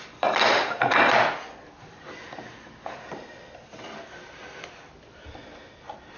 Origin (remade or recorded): remade